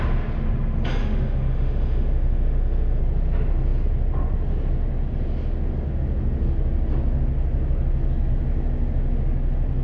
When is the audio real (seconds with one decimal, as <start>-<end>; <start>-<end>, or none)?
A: 0.0-1.0; 3.0-9.8